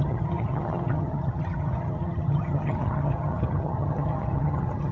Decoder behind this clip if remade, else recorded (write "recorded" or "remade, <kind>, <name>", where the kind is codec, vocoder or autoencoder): remade, vocoder, HiFi-GAN